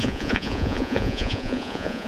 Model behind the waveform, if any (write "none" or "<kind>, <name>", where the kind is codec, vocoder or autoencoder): vocoder, Vocos